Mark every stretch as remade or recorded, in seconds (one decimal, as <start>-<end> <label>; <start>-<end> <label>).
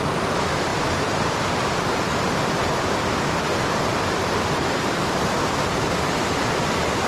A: 0.0-0.7 recorded; 0.7-5.0 remade; 5.0-7.1 recorded